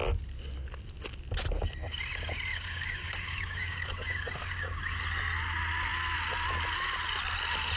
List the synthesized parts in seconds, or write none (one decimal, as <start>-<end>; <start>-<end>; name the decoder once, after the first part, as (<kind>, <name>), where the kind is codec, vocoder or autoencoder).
2.5-4.8 (codec, DAC)